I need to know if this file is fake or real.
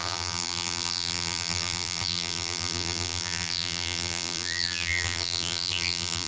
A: fake